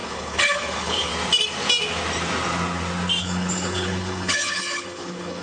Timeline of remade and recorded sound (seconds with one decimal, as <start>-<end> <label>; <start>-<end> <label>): 0.0-1.1 remade; 1.1-3.2 recorded; 3.2-5.4 remade